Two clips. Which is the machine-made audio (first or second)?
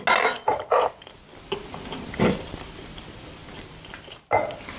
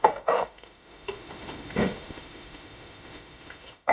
second